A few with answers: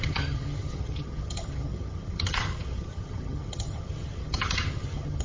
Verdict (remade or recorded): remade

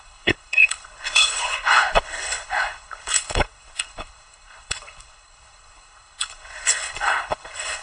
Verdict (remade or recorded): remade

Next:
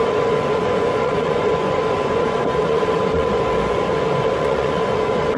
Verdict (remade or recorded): remade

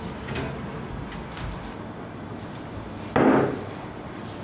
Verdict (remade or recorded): recorded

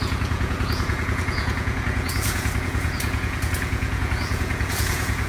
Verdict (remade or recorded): remade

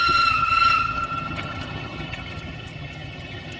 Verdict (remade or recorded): remade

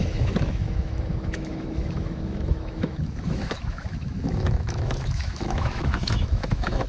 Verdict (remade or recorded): remade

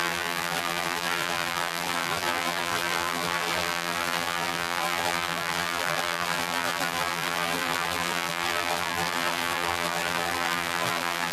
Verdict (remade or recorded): remade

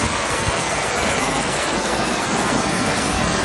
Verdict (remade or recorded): remade